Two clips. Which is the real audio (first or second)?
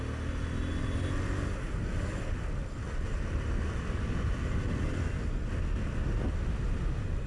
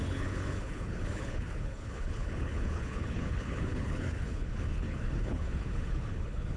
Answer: first